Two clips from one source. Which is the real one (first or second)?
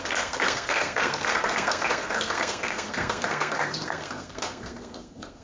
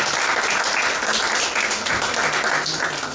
second